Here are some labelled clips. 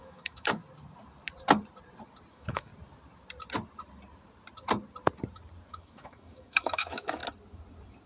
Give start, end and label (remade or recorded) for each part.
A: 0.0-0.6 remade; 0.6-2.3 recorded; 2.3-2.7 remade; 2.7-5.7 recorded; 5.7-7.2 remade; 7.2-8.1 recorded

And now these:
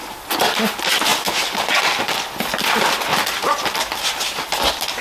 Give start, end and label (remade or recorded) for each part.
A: 0.0-5.0 recorded

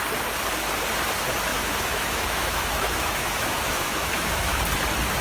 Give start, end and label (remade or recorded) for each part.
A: 0.0-1.5 recorded; 1.5-4.6 remade; 4.6-5.2 recorded

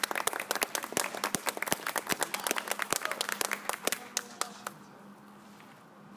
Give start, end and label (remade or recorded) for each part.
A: 0.0-6.2 recorded

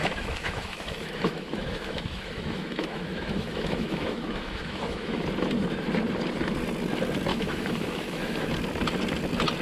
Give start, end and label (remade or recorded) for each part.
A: 0.0-5.2 remade; 5.2-7.3 recorded; 7.3-8.5 remade; 8.5-9.6 recorded

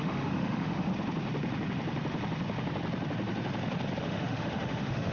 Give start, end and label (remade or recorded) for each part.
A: 0.0-0.9 remade; 0.9-4.0 recorded; 4.0-5.1 remade

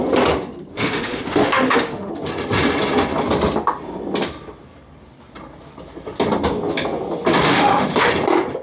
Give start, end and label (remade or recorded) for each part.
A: 0.0-0.7 recorded; 0.7-2.1 remade; 2.1-7.5 recorded; 7.5-8.1 remade; 8.1-8.6 recorded